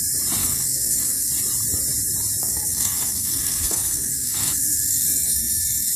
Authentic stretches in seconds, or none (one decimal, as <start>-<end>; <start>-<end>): 0.0-0.4; 1.3-2.4

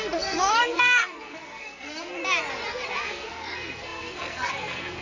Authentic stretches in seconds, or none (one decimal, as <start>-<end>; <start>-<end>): 2.2-2.9

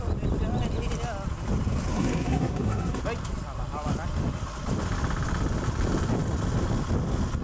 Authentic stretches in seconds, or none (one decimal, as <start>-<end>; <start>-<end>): 0.0-1.9; 3.0-7.4